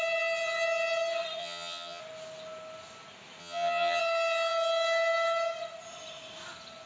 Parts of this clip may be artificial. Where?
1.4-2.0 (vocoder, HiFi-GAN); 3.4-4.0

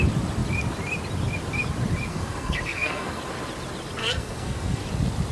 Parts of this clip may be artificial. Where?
2.1-3.2 (codec, SNAC); 4.0-4.8